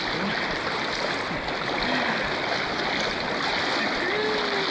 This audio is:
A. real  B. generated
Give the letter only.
A